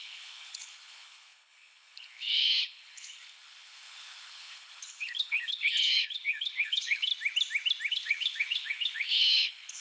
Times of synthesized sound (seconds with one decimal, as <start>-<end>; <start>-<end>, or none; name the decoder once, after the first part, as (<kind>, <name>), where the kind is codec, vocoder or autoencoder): 0.0-7.1 (codec, HILCodec); 7.9-9.8